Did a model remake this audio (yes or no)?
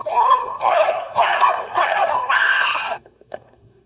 yes